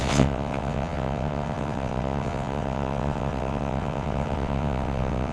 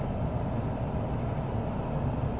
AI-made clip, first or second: first